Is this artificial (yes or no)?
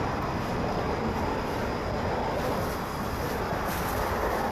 no